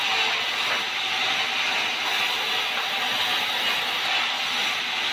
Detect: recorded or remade recorded